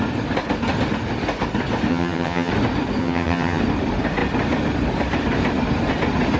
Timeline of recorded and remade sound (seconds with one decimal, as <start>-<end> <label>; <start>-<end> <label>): 0.0-1.9 recorded; 1.9-2.5 remade; 2.5-3.0 recorded; 3.0-3.6 remade; 3.6-6.4 recorded

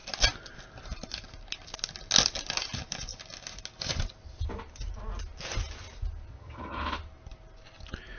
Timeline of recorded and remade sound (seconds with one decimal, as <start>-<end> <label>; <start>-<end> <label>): 0.0-6.3 recorded; 6.3-6.8 remade; 6.8-8.2 recorded